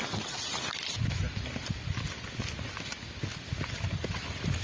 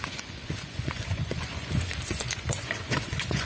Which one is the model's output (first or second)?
second